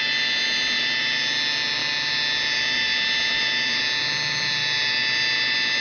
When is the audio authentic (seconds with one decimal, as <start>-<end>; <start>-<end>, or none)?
0.0-5.8